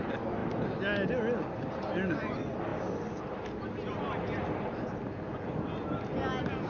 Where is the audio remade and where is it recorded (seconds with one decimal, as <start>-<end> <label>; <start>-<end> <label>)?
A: 0.0-6.7 recorded